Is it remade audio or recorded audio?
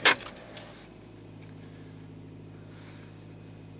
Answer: recorded